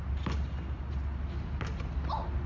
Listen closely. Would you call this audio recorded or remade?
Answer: recorded